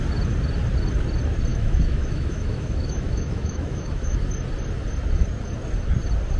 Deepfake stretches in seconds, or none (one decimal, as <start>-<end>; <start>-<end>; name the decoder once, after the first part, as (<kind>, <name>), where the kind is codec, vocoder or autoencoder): 1.5-4.2 (autoencoder, DAC-VAE)